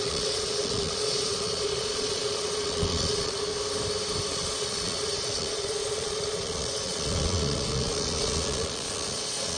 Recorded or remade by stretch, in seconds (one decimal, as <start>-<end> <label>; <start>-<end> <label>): 0.0-3.5 remade; 3.5-4.3 recorded; 4.3-9.6 remade